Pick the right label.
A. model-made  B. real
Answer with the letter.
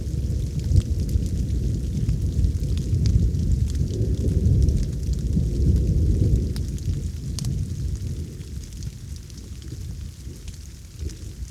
B